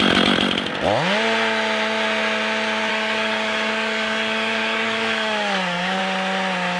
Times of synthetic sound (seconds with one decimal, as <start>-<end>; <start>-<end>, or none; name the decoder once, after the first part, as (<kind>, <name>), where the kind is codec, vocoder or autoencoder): 2.9-6.0 (codec, DAC)